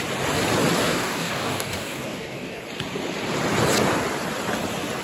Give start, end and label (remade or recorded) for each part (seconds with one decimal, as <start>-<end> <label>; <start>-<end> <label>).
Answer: 0.0-0.8 recorded; 0.8-2.6 remade; 2.6-5.0 recorded